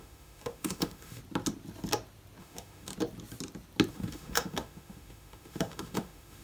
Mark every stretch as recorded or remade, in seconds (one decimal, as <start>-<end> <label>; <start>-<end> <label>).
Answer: 0.0-1.2 remade; 1.2-2.4 recorded; 2.4-2.9 remade; 2.9-3.9 recorded; 3.9-6.4 remade